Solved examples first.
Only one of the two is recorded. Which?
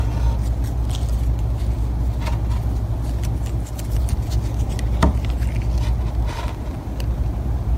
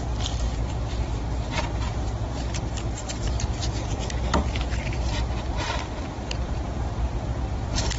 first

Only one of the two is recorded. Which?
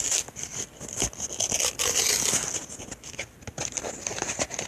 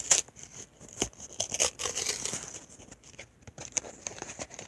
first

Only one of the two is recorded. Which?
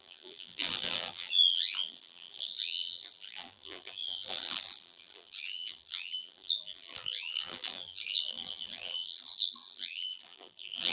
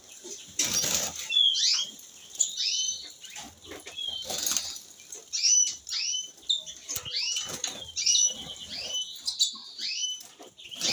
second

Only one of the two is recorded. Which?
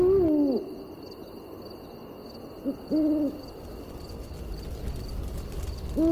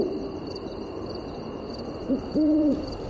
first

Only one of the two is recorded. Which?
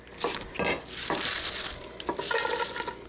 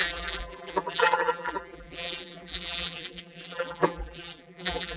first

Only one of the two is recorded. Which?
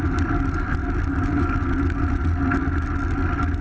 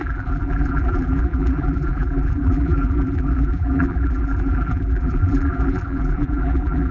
first